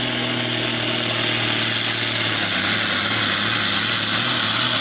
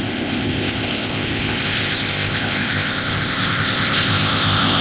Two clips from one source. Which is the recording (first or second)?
first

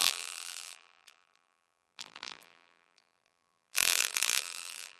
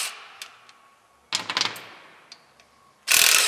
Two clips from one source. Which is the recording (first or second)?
second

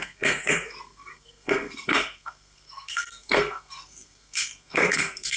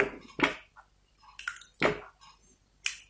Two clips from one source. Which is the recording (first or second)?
second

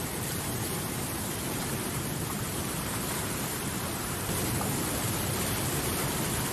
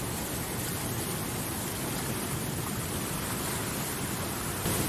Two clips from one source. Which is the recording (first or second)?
second